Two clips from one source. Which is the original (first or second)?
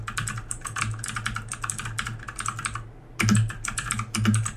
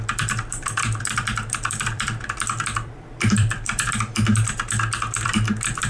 first